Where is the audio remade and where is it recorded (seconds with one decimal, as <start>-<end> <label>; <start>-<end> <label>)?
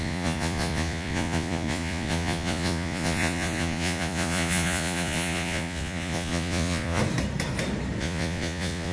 0.0-7.0 remade; 7.0-8.0 recorded; 8.0-8.9 remade